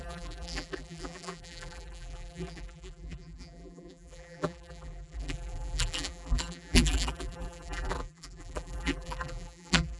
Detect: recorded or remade remade